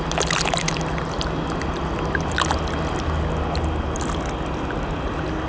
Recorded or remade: recorded